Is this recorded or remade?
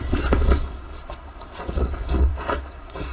remade